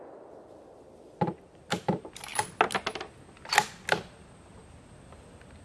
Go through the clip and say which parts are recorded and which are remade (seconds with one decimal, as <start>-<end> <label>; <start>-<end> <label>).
0.0-5.6 recorded